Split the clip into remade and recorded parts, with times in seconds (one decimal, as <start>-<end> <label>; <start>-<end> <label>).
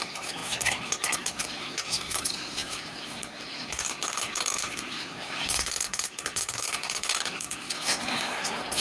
0.0-8.8 remade